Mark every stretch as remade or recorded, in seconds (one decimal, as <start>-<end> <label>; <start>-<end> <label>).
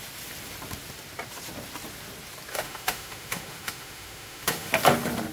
0.0-2.5 recorded; 2.5-4.7 remade; 4.7-5.3 recorded